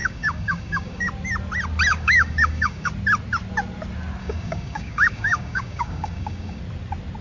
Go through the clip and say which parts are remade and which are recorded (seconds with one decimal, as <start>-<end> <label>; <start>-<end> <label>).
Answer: 0.0-1.1 remade; 1.1-1.9 recorded; 1.9-2.9 remade; 2.9-4.2 recorded; 4.2-6.6 remade; 6.6-7.2 recorded